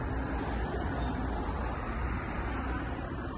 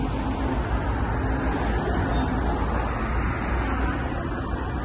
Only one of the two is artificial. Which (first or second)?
first